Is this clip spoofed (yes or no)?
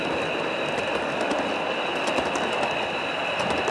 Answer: no